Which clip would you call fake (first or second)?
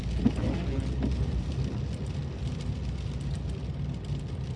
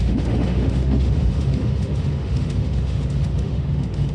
second